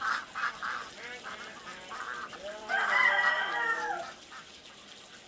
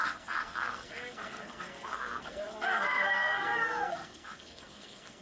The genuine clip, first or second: first